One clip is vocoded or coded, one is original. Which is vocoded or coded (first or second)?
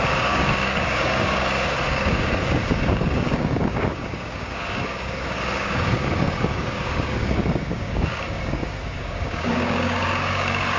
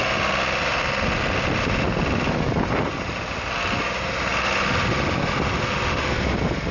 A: first